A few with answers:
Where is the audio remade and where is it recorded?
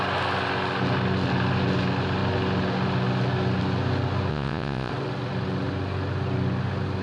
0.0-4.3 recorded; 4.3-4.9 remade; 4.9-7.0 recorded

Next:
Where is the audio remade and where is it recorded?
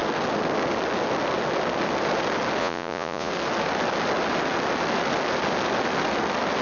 0.0-2.6 recorded; 2.6-3.3 remade; 3.3-6.6 recorded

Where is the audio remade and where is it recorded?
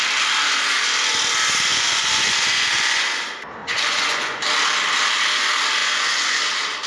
0.0-1.7 recorded; 1.7-3.0 remade; 3.0-3.6 recorded; 3.6-4.4 remade; 4.4-5.8 recorded; 5.8-6.5 remade; 6.5-6.9 recorded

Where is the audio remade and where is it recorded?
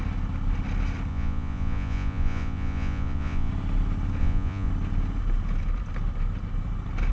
0.0-1.1 recorded; 1.1-3.5 remade; 3.5-4.2 recorded; 4.2-4.7 remade; 4.7-7.1 recorded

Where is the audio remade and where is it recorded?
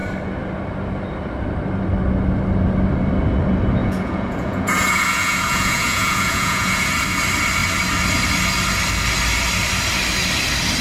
0.0-3.8 recorded; 3.8-6.9 remade; 6.9-10.8 recorded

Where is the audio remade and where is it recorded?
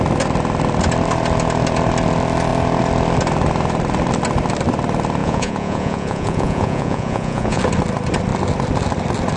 0.0-5.2 recorded; 5.2-7.6 remade; 7.6-9.4 recorded